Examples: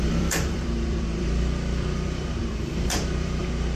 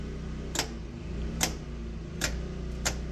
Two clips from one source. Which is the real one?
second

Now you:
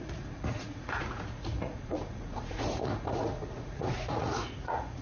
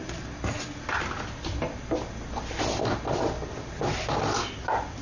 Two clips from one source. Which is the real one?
second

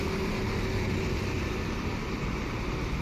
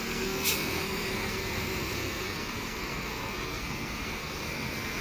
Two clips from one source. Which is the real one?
first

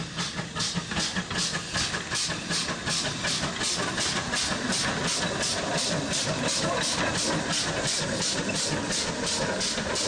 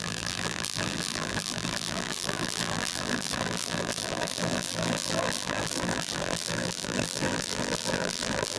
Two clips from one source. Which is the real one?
first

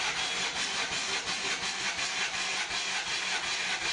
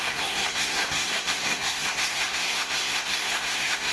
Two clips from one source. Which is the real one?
first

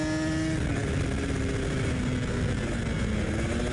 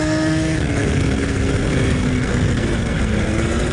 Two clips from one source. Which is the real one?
first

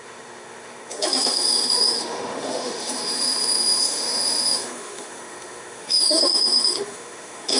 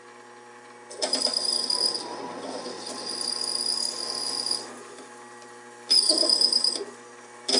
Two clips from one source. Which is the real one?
second